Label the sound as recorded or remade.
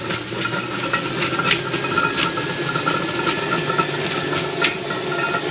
recorded